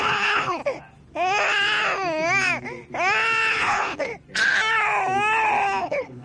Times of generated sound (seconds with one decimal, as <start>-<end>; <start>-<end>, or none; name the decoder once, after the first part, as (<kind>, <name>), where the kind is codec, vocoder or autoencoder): 0.0-0.6 (codec, HILCodec); 3.5-4.1; 5.8-6.2